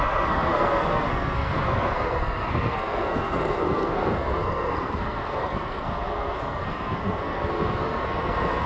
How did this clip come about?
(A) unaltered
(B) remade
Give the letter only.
B